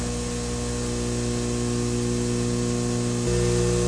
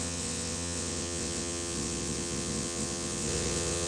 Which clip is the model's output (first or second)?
second